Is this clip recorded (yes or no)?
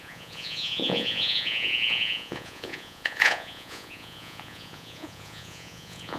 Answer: no